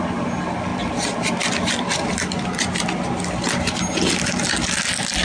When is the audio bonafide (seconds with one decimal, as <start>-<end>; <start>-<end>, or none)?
0.0-5.2